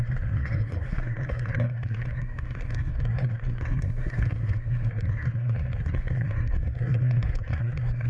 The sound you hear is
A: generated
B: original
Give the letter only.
A